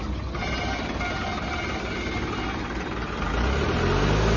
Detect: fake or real real